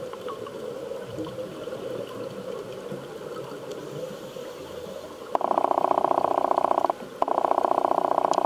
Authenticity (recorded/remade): recorded